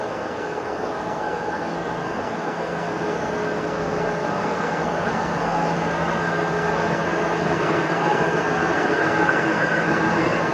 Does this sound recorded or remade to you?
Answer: remade